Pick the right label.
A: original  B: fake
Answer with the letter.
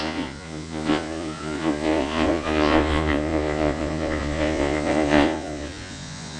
B